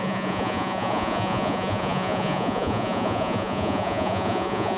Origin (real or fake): fake